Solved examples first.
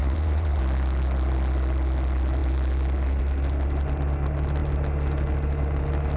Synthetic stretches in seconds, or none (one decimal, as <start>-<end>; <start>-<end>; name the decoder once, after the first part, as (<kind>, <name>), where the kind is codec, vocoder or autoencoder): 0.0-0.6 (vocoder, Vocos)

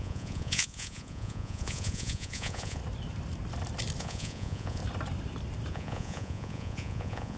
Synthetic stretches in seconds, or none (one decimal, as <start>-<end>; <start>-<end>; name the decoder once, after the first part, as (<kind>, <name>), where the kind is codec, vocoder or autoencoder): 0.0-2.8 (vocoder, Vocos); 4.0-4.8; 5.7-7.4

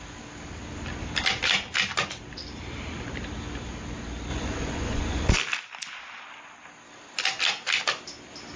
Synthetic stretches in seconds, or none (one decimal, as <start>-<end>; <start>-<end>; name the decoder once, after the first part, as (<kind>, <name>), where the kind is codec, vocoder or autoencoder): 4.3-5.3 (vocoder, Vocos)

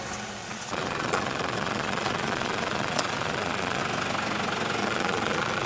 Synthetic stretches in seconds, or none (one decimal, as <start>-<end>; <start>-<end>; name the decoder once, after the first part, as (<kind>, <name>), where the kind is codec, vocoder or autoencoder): 0.4-3.8 (vocoder, Vocos); 4.8-5.7

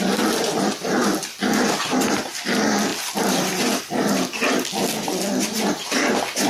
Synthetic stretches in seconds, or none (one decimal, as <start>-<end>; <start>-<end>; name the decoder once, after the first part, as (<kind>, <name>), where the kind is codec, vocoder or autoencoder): none

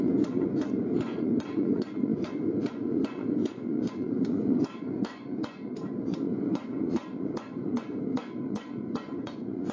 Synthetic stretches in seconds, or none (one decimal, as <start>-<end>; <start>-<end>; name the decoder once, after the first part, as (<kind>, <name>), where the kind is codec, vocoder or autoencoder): 0.0-9.7 (vocoder, Vocos)